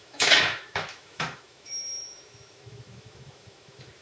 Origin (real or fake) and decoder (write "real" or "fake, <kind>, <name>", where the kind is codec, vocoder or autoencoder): fake, autoencoder, DAC-VAE